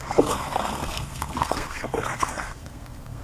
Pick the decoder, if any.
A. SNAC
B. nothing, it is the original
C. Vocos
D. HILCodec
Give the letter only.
A